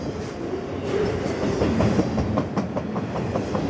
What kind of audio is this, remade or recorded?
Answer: recorded